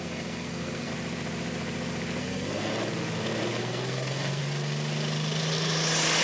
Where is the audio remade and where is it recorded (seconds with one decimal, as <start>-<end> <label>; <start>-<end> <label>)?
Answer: 0.0-0.9 remade; 0.9-2.2 recorded; 2.2-2.7 remade; 2.7-3.5 recorded; 3.5-4.4 remade; 4.4-6.2 recorded